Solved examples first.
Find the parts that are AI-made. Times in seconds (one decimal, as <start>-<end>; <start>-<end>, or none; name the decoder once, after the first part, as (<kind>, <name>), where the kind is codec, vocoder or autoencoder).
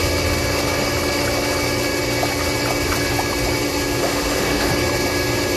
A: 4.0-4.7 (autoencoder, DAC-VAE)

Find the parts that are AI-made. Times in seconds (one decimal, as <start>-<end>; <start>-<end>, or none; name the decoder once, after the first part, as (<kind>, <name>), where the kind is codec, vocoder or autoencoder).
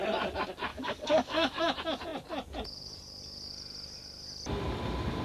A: 0.7-1.6 (codec, DAC)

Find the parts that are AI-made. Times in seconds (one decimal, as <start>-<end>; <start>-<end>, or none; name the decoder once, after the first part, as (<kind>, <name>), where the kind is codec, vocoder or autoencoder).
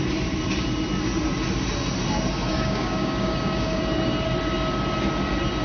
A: 2.5-3.8 (codec, DAC)